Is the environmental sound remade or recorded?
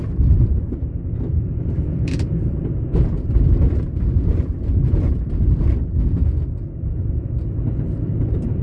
remade